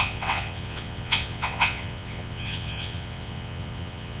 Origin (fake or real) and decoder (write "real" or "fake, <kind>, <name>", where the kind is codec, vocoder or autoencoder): fake, vocoder, WaveNeXt